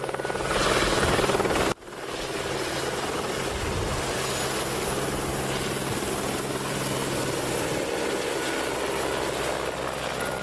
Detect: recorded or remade recorded